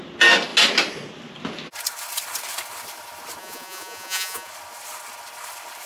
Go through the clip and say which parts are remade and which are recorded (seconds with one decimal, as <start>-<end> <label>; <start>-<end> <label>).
0.0-3.4 recorded; 3.4-4.5 remade; 4.5-5.9 recorded